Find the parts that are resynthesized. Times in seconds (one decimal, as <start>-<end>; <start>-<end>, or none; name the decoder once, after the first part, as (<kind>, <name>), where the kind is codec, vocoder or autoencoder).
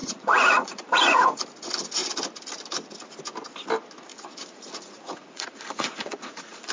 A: 0.0-1.4 (vocoder, Vocos); 4.1-6.7